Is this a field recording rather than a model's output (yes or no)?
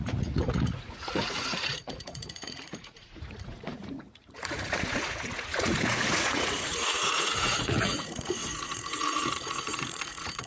no